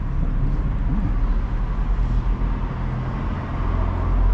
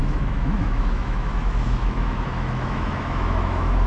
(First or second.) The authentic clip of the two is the first